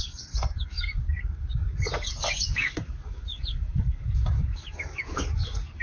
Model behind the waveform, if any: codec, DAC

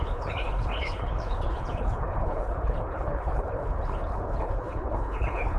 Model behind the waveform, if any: codec, HILCodec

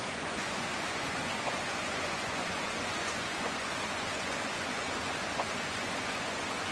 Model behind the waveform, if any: vocoder, Vocos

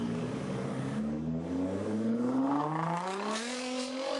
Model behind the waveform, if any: codec, DAC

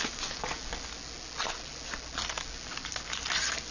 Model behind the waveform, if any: none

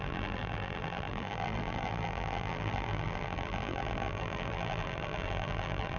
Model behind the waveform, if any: vocoder, BigVGAN v2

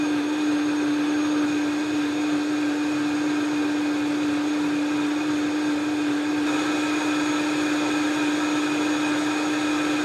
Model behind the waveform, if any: none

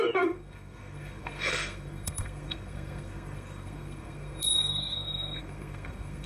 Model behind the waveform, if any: codec, SNAC